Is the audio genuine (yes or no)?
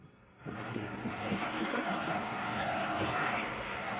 no